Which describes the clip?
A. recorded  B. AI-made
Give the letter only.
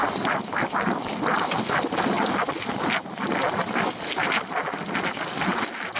A